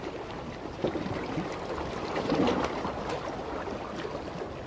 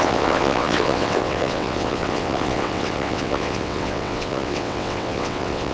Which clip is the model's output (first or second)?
second